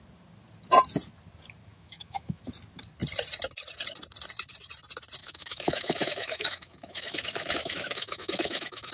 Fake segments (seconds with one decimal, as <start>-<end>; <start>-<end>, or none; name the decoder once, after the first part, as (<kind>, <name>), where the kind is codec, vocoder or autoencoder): 1.7-2.4 (autoencoder, DAC-VAE); 5.2-8.9